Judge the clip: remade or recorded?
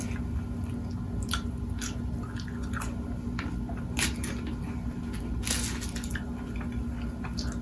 recorded